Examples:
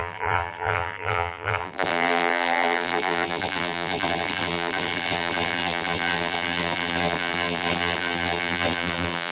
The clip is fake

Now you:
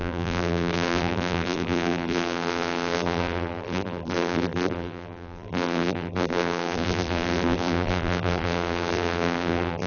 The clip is fake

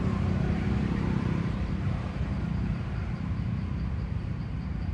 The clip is fake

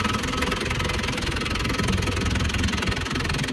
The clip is real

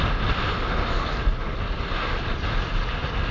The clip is real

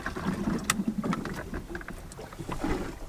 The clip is real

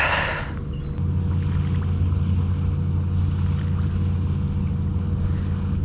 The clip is real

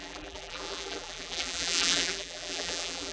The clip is fake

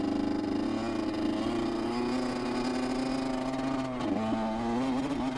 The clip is real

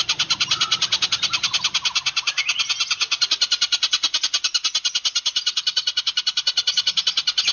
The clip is real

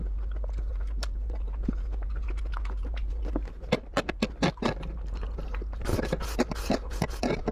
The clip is real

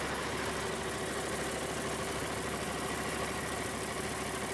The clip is real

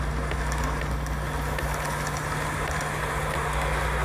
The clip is real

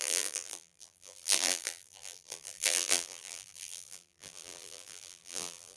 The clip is fake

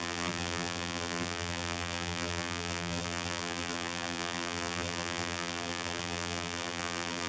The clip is fake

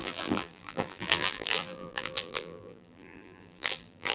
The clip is fake